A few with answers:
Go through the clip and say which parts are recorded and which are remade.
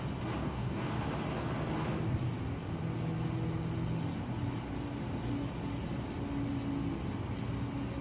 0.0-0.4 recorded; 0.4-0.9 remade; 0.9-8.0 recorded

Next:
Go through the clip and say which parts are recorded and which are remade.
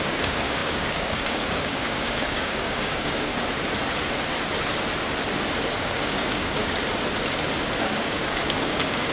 0.0-3.3 remade; 3.3-5.8 recorded; 5.8-6.6 remade; 6.6-7.8 recorded; 7.8-9.1 remade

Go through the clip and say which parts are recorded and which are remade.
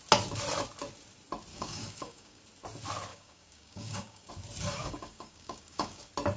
0.0-1.5 recorded; 1.5-2.4 remade; 2.4-3.1 recorded; 3.1-4.3 remade; 4.3-4.7 recorded; 4.7-6.0 remade; 6.0-6.4 recorded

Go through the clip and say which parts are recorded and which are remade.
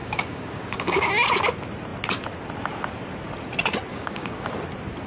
0.0-1.1 remade; 1.1-3.9 recorded; 3.9-4.5 remade; 4.5-5.1 recorded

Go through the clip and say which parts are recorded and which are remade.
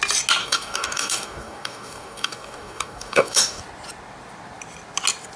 0.0-0.4 recorded; 0.4-3.6 remade; 3.6-5.4 recorded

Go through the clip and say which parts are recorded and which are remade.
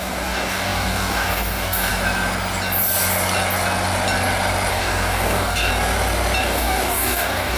0.0-1.9 remade; 1.9-4.7 recorded; 4.7-5.7 remade; 5.7-6.4 recorded; 6.4-7.6 remade